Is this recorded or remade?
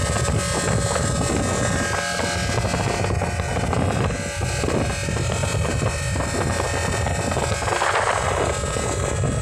recorded